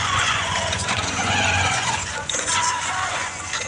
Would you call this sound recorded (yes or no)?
no